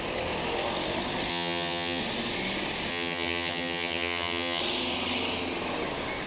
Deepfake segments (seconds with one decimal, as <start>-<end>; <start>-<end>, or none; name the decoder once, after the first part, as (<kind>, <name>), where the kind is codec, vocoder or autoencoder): 1.3-2.0 (vocoder, HiFi-GAN); 2.9-4.6